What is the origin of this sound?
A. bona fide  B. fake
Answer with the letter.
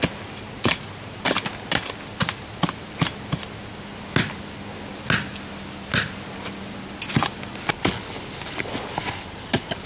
A